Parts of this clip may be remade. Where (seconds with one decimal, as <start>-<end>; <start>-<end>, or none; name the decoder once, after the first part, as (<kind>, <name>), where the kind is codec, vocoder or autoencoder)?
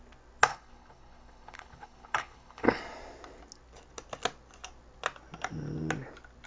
0.5-2.8 (codec, HILCodec)